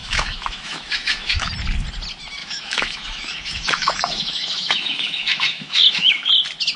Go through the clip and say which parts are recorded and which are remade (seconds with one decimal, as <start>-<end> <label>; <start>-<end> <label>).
0.0-1.5 remade; 1.5-2.4 recorded; 2.4-6.3 remade; 6.3-6.8 recorded

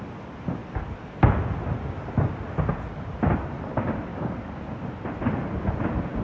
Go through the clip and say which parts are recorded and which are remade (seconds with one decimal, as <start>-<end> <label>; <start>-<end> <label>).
0.0-4.1 recorded; 4.1-5.2 remade; 5.2-6.2 recorded

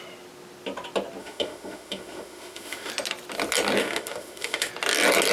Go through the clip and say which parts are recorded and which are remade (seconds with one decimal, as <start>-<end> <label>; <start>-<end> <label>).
0.0-1.2 recorded; 1.2-2.9 remade; 2.9-3.8 recorded; 3.8-4.7 remade; 4.7-5.3 recorded

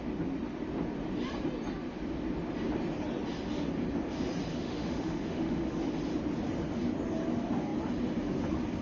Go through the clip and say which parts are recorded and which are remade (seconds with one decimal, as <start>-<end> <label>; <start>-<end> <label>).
0.0-4.5 recorded; 4.5-5.8 remade; 5.8-8.8 recorded

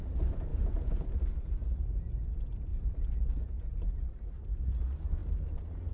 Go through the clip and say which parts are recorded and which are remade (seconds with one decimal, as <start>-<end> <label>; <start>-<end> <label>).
0.0-0.5 recorded; 0.5-1.8 remade; 1.8-2.7 recorded; 2.7-4.0 remade; 4.0-5.9 recorded

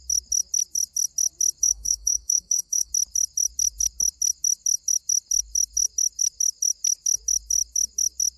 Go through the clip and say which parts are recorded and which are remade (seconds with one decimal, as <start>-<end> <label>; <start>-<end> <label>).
0.0-1.6 recorded; 1.6-2.9 remade; 2.9-8.4 recorded

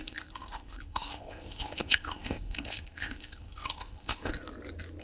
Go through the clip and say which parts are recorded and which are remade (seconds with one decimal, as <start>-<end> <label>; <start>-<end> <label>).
0.0-4.3 remade; 4.3-5.0 recorded

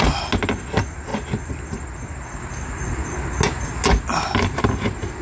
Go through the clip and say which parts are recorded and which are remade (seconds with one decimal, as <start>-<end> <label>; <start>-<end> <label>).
0.0-5.2 recorded